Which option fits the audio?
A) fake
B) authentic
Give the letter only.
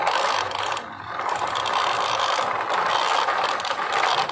B